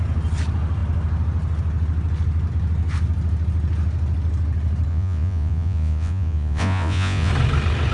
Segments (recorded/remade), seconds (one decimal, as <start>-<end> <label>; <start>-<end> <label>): 0.0-4.9 recorded; 4.9-7.3 remade; 7.3-7.9 recorded